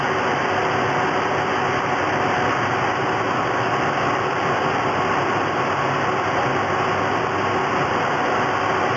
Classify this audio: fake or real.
real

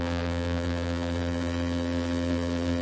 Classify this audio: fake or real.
fake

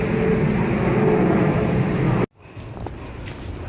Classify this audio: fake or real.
real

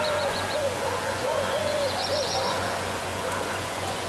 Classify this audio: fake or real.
fake